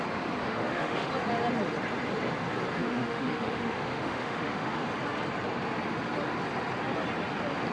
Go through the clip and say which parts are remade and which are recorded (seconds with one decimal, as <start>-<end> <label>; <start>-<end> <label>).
0.0-0.4 recorded; 0.4-1.1 remade; 1.1-2.8 recorded; 2.8-4.9 remade; 4.9-7.7 recorded